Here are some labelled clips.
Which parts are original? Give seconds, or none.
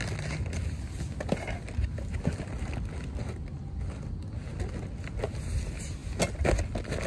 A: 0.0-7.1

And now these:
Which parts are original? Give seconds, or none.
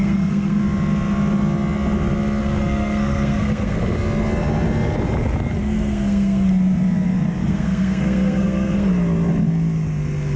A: 0.6-2.4; 3.8-5.6; 6.5-7.4; 8.9-10.4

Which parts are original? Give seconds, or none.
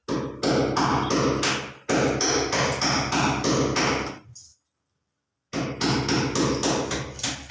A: 0.0-7.5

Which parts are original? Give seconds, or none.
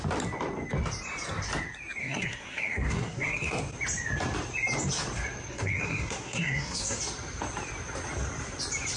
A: 0.0-2.0; 3.6-5.5; 7.0-9.0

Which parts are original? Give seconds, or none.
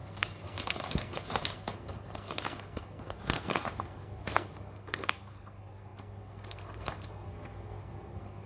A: none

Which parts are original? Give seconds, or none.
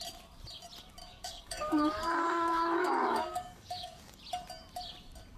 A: 0.0-1.0; 4.2-5.4